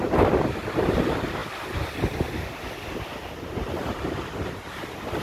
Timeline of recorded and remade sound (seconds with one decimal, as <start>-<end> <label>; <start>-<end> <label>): 0.0-5.2 recorded